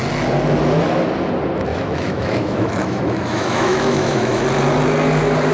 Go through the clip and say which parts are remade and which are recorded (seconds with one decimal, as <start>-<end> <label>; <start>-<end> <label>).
0.0-1.7 recorded; 1.7-4.4 remade; 4.4-5.5 recorded